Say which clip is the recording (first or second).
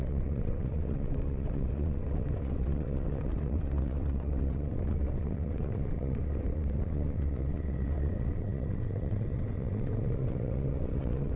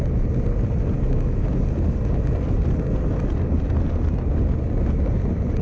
second